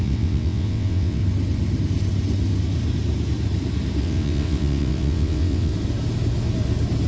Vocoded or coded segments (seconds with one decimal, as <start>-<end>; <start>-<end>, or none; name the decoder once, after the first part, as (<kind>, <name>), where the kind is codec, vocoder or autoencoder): 0.0-1.2 (vocoder, WaveNeXt); 4.0-5.7